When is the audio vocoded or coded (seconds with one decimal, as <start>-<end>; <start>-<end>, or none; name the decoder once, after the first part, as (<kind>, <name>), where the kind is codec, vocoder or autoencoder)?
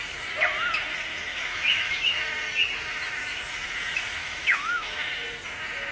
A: 1.3-2.2 (autoencoder, DAC-VAE); 4.2-5.0